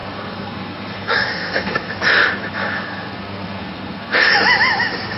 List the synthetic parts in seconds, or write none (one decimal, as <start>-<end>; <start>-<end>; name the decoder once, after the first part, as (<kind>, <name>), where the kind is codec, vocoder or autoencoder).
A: 0.0-1.9 (codec, SNAC); 2.4-4.3